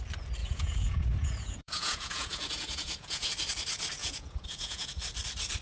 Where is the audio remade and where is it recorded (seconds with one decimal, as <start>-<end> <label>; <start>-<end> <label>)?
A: 0.0-0.4 recorded; 0.4-3.3 remade; 3.3-4.0 recorded; 4.0-5.0 remade; 5.0-5.6 recorded